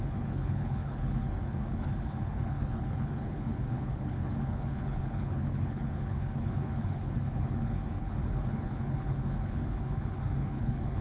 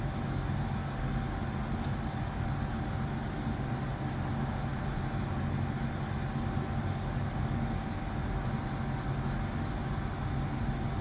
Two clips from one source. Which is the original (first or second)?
second